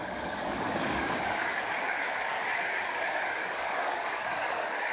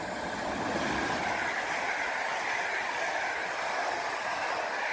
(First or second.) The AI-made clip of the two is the first